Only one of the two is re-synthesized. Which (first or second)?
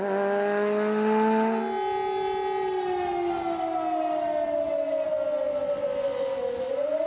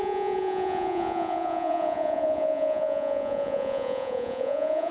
second